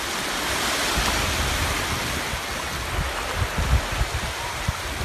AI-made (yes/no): no